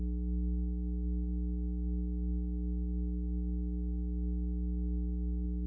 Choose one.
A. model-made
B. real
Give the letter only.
A